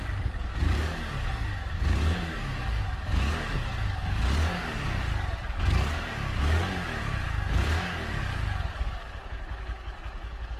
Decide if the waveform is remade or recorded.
remade